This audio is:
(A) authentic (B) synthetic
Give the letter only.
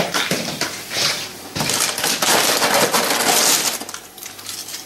A